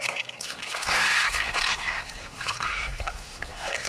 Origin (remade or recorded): remade